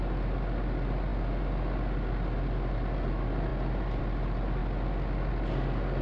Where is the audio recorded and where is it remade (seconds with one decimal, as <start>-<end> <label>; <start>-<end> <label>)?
0.0-6.0 recorded